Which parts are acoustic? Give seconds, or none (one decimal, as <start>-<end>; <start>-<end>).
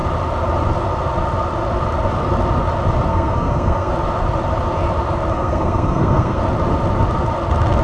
0.0-3.1; 3.9-5.3; 6.4-7.8